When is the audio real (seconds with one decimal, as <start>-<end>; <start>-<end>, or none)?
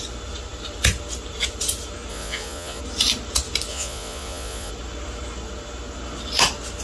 0.0-2.1; 2.8-3.7; 4.7-6.8